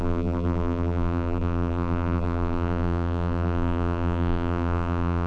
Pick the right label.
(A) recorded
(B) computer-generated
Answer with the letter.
B